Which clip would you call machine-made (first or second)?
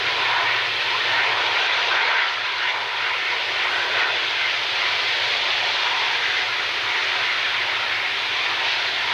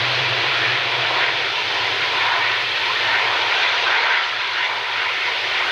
second